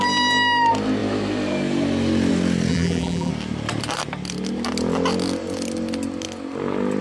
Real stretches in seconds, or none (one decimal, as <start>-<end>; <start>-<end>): 0.0-2.7; 3.3-7.0